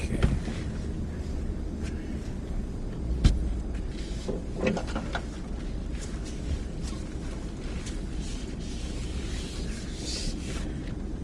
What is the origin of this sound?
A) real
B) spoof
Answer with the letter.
A